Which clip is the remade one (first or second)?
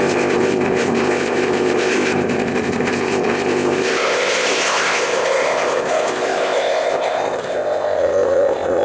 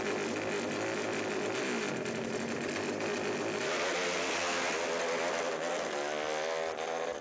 first